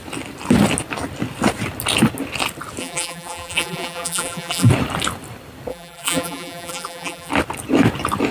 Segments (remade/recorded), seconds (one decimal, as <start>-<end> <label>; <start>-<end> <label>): 0.0-2.8 recorded; 2.8-4.7 remade; 4.7-5.7 recorded; 5.7-7.3 remade; 7.3-8.3 recorded